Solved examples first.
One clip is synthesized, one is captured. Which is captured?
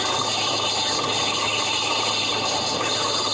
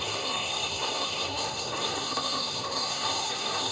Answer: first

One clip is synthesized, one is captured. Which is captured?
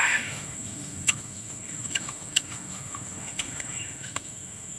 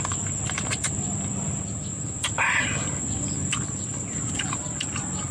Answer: second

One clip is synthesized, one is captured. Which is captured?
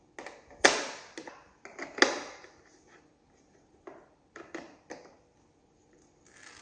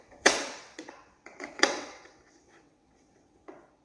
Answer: first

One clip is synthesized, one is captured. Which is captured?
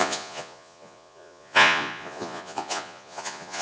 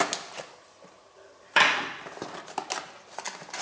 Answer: second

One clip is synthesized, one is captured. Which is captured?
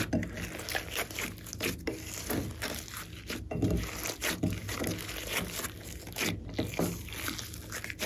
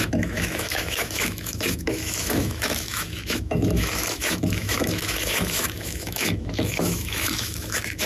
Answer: first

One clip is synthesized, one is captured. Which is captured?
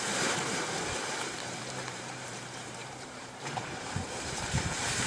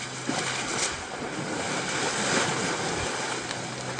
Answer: second